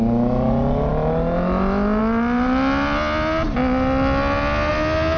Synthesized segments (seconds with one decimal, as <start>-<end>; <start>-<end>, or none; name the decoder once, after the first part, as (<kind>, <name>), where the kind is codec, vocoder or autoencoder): none